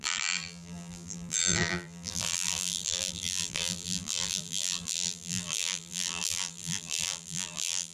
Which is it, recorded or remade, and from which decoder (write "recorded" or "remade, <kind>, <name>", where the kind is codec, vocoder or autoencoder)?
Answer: remade, vocoder, BigVGAN v2